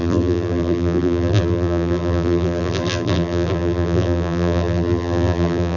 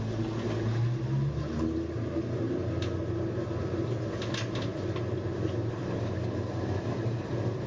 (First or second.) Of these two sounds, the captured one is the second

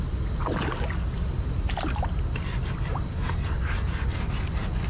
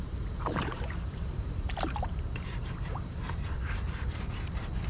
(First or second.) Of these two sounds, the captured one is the first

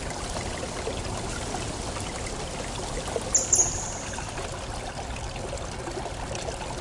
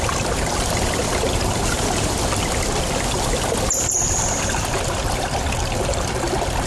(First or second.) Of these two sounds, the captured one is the first